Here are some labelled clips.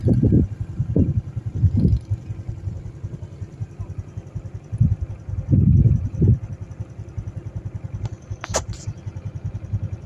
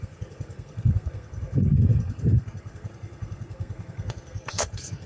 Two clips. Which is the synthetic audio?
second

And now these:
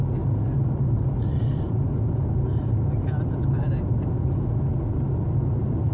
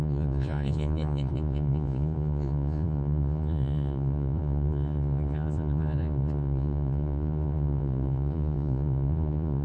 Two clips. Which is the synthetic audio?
second